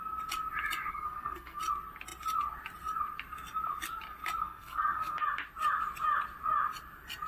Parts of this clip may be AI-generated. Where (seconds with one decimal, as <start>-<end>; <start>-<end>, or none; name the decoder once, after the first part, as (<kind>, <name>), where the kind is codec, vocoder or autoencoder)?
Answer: 0.9-1.6 (codec, SNAC); 4.4-5.2